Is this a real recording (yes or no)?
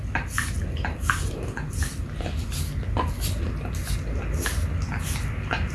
yes